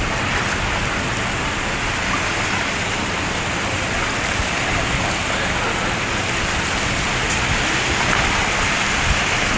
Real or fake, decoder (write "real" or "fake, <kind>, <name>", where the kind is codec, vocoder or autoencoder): real